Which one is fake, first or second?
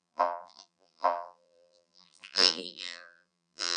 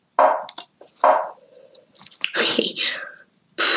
first